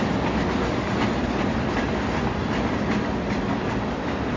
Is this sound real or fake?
real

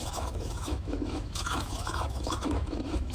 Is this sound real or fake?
fake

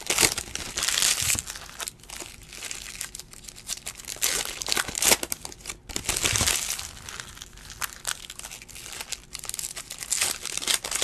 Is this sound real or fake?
real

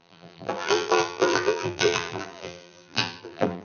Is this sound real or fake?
fake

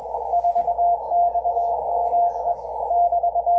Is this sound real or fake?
real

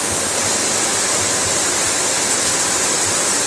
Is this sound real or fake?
real